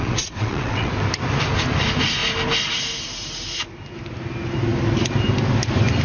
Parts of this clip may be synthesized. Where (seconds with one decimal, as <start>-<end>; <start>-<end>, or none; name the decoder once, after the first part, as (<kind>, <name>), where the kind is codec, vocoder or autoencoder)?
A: 0.0-0.9 (vocoder, WaveNeXt)